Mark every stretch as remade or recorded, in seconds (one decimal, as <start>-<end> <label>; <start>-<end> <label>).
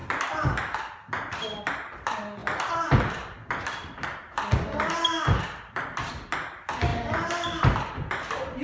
0.0-8.6 recorded